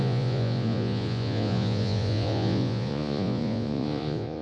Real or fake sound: fake